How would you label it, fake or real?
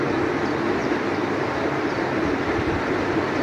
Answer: real